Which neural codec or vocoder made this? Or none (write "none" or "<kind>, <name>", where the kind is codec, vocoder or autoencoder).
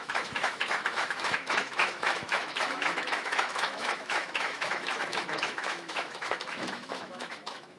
autoencoder, DAC-VAE